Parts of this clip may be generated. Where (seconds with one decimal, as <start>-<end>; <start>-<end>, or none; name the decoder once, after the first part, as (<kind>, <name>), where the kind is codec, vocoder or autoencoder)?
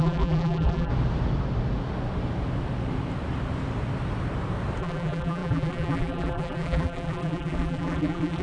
0.0-0.9 (vocoder, BigVGAN v2); 4.8-8.4